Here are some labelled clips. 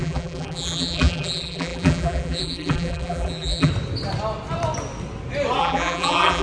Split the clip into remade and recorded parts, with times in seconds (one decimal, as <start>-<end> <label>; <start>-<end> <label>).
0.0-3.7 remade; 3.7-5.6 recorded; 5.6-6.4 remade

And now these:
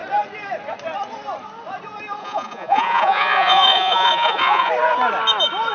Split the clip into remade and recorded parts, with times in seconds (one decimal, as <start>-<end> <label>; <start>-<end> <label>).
0.0-2.2 recorded; 2.2-4.7 remade; 4.7-5.7 recorded

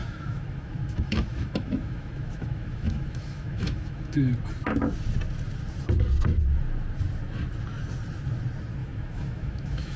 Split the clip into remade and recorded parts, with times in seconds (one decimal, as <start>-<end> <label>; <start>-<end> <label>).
0.0-4.3 remade; 4.3-8.8 recorded; 8.8-10.0 remade

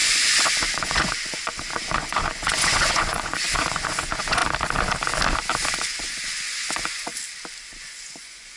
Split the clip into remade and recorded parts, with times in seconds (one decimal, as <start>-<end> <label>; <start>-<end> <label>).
0.0-4.4 remade; 4.4-5.7 recorded; 5.7-7.1 remade; 7.1-7.8 recorded; 7.8-8.6 remade